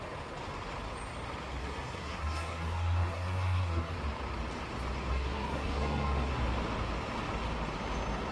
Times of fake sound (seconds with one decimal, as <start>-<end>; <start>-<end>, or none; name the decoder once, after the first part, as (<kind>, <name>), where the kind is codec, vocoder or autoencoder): 1.6-3.9 (codec, SNAC); 5.1-6.3